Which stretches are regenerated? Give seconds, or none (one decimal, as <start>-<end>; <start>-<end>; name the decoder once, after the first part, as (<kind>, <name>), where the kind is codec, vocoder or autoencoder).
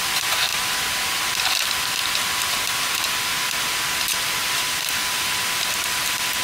0.0-0.5 (vocoder, BigVGAN v2); 4.3-6.4